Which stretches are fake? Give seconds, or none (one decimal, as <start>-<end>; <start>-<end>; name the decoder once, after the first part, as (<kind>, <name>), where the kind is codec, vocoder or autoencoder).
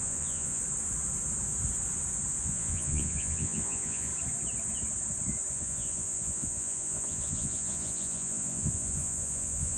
0.0-0.6 (vocoder, Vocos); 2.4-4.1; 5.5-9.8